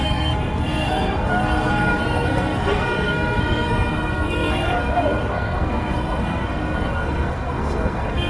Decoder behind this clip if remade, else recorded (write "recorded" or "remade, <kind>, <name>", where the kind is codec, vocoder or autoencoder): remade, codec, SNAC